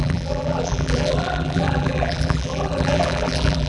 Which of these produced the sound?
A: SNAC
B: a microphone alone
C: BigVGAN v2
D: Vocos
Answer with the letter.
C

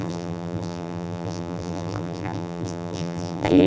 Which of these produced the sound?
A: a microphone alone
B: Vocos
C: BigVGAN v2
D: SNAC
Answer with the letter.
C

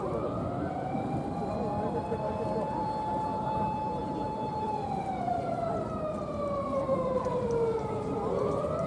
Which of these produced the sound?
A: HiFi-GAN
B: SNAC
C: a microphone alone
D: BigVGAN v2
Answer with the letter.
D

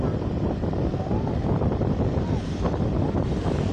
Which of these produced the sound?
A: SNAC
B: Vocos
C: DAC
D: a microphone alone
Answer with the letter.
D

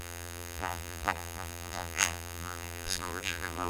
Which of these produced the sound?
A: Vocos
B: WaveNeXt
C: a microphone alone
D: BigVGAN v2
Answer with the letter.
D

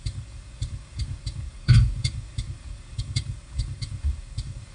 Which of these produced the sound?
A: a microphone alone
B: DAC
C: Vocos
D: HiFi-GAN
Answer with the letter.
B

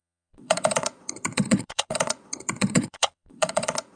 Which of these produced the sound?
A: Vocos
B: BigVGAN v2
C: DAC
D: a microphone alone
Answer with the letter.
A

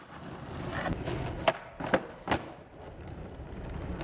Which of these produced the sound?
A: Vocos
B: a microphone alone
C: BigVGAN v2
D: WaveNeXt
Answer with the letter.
B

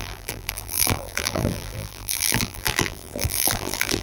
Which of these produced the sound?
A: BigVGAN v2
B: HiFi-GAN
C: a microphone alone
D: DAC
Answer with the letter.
A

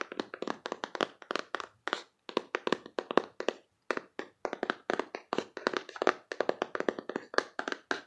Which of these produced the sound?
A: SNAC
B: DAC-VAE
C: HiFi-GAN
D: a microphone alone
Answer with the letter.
D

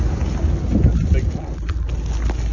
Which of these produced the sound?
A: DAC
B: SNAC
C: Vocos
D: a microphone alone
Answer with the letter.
D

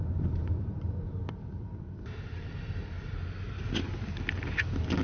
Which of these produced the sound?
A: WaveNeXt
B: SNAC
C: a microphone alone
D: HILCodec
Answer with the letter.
C